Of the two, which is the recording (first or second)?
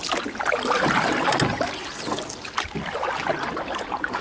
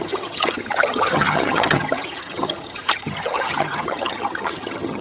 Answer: first